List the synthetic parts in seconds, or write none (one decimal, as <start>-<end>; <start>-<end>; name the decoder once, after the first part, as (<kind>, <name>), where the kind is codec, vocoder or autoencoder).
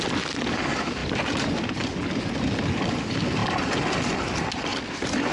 1.0-2.3 (vocoder, BigVGAN v2)